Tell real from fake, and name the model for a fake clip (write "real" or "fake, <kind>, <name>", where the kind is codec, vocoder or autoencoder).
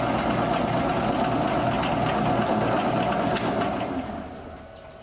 real